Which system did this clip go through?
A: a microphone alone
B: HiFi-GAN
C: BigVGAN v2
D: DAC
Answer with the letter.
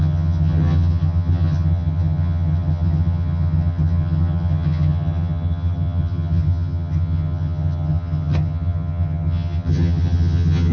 B